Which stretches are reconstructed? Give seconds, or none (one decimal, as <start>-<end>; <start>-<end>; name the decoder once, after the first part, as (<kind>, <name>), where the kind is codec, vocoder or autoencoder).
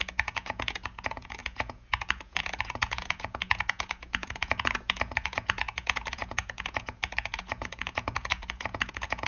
0.0-9.3 (vocoder, Vocos)